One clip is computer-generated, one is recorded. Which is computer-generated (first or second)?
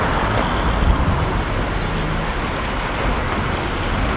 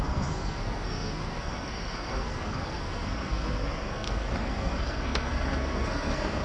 second